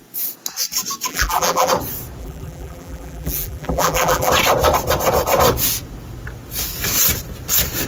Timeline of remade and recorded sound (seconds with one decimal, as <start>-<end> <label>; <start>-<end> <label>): 0.0-1.1 recorded; 1.1-1.7 remade; 1.7-2.2 recorded; 2.2-4.3 remade; 4.3-7.9 recorded